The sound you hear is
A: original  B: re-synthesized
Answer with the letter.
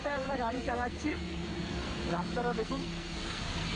B